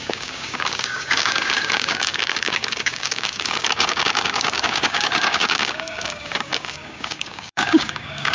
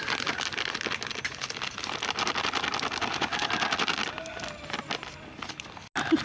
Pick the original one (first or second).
second